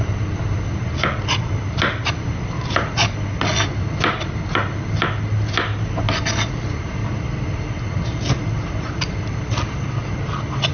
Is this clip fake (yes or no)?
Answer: no